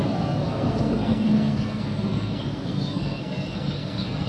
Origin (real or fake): fake